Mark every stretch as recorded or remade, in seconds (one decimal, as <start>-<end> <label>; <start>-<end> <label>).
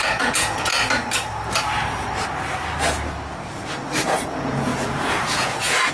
0.0-0.7 remade; 0.7-4.2 recorded; 4.2-5.9 remade